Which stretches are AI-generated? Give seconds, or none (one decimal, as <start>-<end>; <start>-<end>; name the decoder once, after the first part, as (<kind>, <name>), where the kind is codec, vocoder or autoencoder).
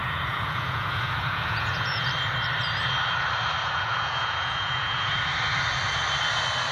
0.0-2.1 (vocoder, Vocos); 3.6-5.1